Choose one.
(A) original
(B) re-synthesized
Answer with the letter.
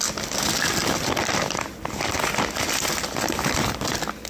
A